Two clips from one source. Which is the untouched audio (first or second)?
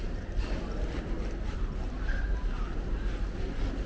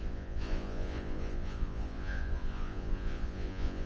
first